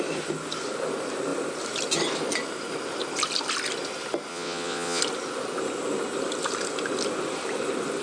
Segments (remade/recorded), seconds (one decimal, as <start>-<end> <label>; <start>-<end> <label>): 0.0-4.3 recorded; 4.3-5.0 remade; 5.0-8.0 recorded